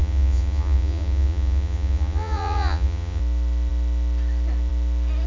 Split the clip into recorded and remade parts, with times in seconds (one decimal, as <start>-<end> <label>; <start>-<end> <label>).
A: 0.0-3.2 remade; 3.2-5.3 recorded